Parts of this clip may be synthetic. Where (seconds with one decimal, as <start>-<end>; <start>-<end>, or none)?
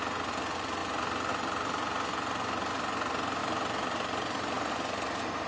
3.4-4.7